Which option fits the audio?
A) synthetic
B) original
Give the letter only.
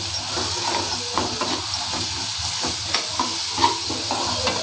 B